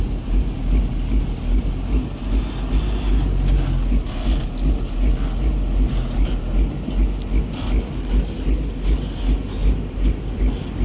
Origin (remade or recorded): recorded